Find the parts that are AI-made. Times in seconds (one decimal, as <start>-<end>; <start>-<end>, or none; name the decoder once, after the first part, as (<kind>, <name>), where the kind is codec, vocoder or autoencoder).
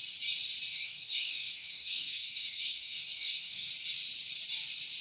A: 0.7-3.7 (codec, DAC)